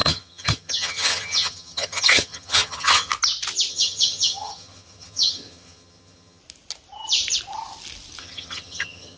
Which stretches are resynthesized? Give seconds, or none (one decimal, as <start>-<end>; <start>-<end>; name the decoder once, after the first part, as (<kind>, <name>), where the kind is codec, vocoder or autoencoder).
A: 0.0-3.1 (vocoder, HiFi-GAN); 3.7-6.4; 8.2-9.2

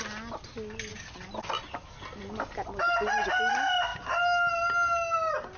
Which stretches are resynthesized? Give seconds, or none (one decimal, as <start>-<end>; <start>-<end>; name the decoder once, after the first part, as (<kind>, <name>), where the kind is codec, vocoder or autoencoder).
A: none

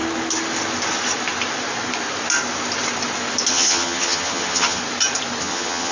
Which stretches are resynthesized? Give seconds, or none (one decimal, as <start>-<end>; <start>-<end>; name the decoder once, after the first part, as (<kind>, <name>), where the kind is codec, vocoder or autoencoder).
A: 3.5-4.8 (vocoder, HiFi-GAN); 5.4-5.9

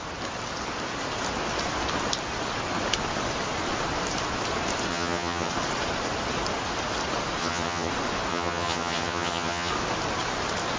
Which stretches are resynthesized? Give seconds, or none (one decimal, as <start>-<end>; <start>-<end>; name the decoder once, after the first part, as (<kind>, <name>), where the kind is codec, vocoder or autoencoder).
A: 4.9-5.5 (vocoder, HiFi-GAN); 7.4-7.9; 8.3-9.7

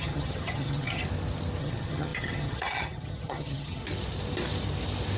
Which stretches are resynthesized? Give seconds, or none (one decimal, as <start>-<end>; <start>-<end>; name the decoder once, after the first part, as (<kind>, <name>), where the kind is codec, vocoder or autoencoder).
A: 0.0-1.0 (vocoder, HiFi-GAN); 1.6-3.8

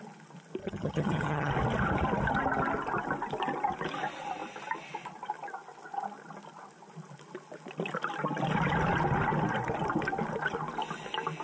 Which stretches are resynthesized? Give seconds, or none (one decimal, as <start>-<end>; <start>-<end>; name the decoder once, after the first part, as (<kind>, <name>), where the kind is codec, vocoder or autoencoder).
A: 0.6-1.5 (vocoder, HiFi-GAN)